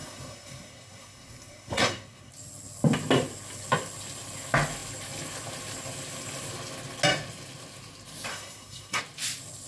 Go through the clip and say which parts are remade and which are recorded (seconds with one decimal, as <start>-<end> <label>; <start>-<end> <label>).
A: 0.0-2.3 remade; 2.3-8.3 recorded; 8.3-9.0 remade; 9.0-9.7 recorded